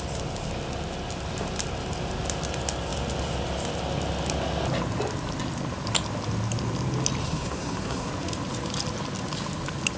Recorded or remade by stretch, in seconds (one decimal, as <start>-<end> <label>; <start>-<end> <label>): 0.0-7.2 recorded; 7.2-8.1 remade; 8.1-10.0 recorded